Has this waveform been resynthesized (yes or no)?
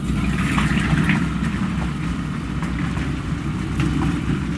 no